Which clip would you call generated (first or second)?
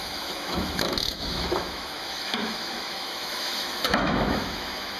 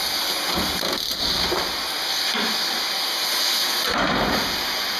first